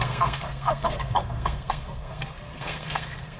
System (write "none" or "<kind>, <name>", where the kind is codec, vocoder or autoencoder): codec, SNAC